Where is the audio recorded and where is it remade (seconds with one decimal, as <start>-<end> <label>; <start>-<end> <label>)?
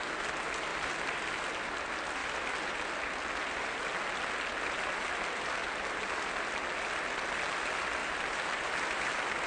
0.0-0.7 recorded; 0.7-1.4 remade; 1.4-8.0 recorded; 8.0-8.7 remade; 8.7-9.5 recorded